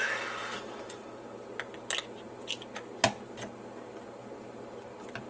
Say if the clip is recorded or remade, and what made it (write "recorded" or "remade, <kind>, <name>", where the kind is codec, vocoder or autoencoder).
recorded